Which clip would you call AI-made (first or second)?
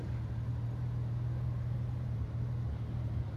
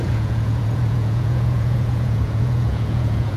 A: second